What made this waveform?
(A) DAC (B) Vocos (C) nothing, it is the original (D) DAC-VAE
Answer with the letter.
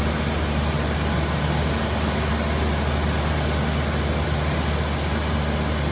C